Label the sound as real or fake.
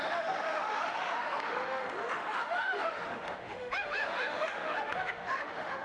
fake